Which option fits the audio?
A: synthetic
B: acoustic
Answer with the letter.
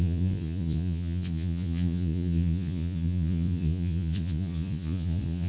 A